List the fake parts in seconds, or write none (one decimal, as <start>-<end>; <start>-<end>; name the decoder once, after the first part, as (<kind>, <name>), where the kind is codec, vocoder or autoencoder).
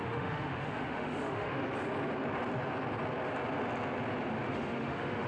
0.0-1.6 (autoencoder, DAC-VAE); 4.5-5.3